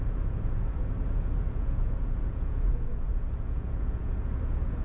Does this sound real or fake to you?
fake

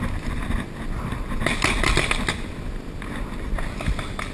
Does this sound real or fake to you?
real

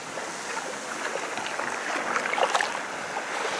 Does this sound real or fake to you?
real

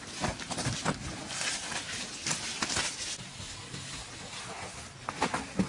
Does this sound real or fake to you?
real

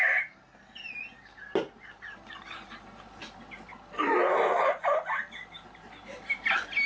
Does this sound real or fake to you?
real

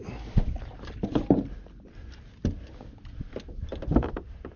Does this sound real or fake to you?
real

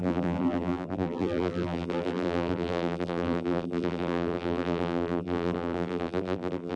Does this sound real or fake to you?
fake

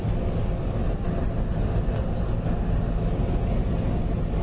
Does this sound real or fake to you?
real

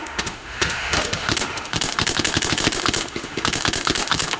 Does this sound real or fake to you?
fake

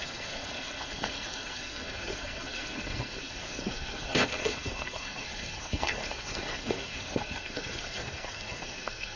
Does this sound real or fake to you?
fake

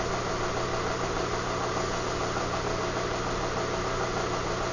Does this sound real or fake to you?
real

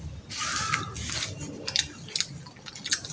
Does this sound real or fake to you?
real